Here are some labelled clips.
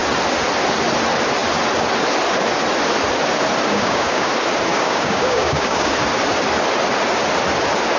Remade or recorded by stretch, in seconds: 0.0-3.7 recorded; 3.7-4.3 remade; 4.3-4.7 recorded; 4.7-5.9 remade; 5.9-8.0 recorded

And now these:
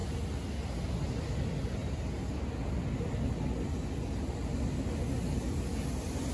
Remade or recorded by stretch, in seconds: 0.0-6.3 recorded

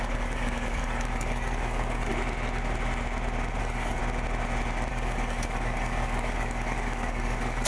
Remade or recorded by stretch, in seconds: 0.0-2.1 remade; 2.1-3.6 recorded; 3.6-4.0 remade; 4.0-4.9 recorded; 4.9-7.7 remade

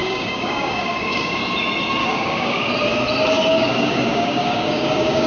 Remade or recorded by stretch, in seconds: 0.0-1.4 remade; 1.4-2.0 recorded; 2.0-2.7 remade; 2.7-3.5 recorded; 3.5-5.3 remade

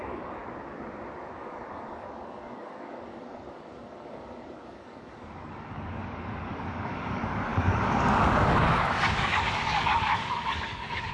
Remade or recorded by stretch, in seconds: 0.0-0.4 remade; 0.4-1.3 recorded; 1.3-11.1 remade

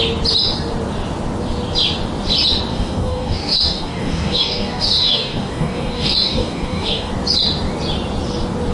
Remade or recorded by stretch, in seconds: 0.0-2.7 recorded; 2.7-7.1 remade; 7.1-8.7 recorded

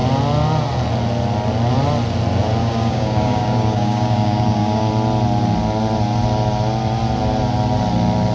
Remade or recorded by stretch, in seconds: 0.0-2.6 recorded; 2.6-4.9 remade; 4.9-8.3 recorded

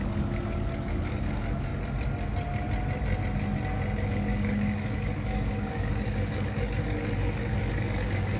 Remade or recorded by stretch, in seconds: 0.0-1.7 remade; 1.7-4.1 recorded; 4.1-8.4 remade